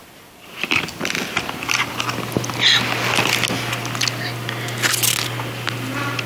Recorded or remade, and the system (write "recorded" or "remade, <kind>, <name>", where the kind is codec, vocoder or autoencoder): recorded